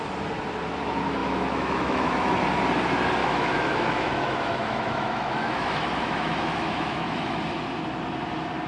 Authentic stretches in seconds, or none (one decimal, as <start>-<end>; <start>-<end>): 0.0-1.2; 2.3-3.2; 7.4-8.7